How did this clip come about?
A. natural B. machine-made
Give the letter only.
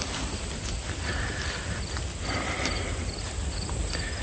A